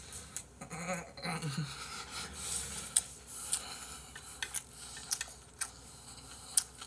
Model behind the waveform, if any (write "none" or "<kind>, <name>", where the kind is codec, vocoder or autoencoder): none